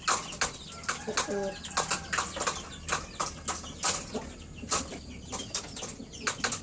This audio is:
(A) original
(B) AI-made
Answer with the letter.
A